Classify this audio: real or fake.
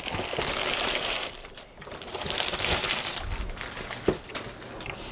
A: real